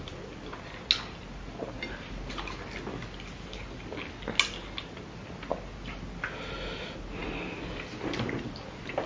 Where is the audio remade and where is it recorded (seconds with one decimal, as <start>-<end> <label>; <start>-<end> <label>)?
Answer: 0.0-9.1 recorded